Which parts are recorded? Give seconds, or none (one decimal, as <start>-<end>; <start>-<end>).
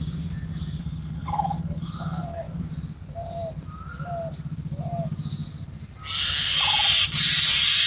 0.0-0.8; 2.4-7.9